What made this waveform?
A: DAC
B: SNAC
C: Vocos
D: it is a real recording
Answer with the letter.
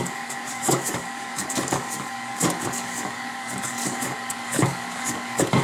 A